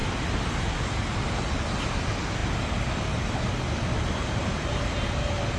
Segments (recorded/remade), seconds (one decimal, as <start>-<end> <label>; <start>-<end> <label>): 0.0-5.6 recorded